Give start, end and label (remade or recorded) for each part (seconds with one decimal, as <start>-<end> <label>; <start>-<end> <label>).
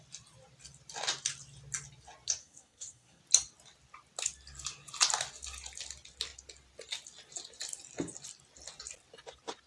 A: 0.0-2.4 recorded; 2.4-3.2 remade; 3.2-9.7 recorded